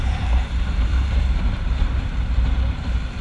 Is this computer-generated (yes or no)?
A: yes